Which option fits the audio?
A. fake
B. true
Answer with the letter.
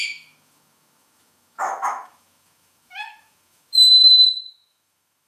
A